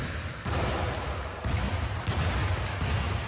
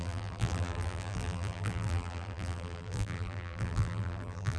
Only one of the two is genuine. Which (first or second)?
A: first